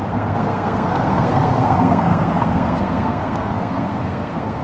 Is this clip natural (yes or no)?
no